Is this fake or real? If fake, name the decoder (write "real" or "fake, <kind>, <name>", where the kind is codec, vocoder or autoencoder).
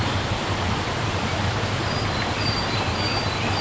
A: real